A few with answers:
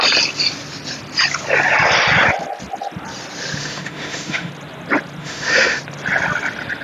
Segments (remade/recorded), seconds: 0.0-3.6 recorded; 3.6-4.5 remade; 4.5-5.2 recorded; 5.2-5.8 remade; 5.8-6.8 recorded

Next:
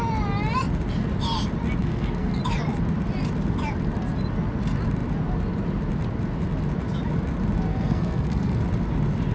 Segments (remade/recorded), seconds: 0.0-1.8 recorded; 1.8-2.4 remade; 2.4-7.7 recorded; 7.7-8.6 remade; 8.6-9.3 recorded

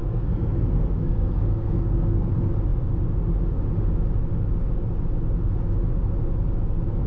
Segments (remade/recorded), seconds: 0.0-2.3 remade; 2.3-7.1 recorded

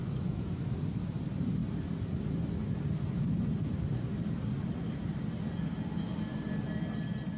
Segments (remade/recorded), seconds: 0.0-0.6 remade; 0.6-7.4 recorded

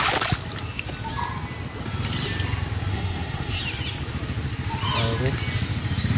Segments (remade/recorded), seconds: 0.0-2.9 recorded; 2.9-3.6 remade; 3.6-6.2 recorded

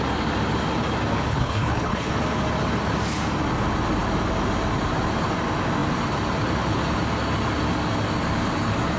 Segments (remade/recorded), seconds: 0.0-1.3 recorded; 1.3-2.1 remade; 2.1-9.0 recorded

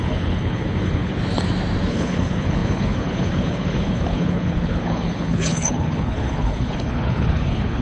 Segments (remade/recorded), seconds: 0.0-1.1 remade; 1.1-1.9 recorded; 1.9-7.8 remade

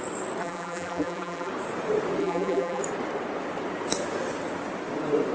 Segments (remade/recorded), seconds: 0.0-0.4 recorded; 0.4-1.5 remade; 1.5-2.2 recorded; 2.2-2.8 remade; 2.8-5.3 recorded